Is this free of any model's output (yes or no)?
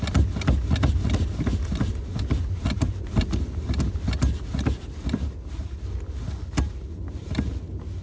yes